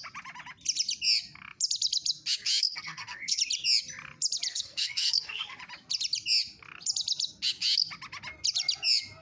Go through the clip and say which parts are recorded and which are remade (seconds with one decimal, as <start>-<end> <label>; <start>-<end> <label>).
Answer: 0.0-2.6 recorded; 2.6-3.4 remade; 3.4-4.5 recorded; 4.5-5.6 remade; 5.6-9.2 recorded